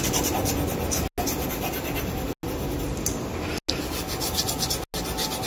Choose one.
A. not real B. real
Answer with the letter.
B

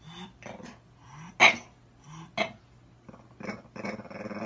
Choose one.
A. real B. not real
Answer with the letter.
A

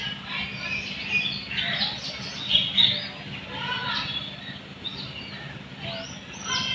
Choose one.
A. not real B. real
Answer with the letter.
B